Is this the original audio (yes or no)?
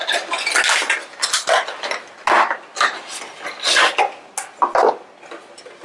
yes